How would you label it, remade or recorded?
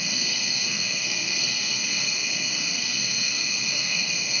remade